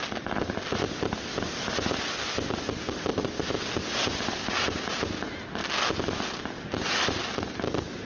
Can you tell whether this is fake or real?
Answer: real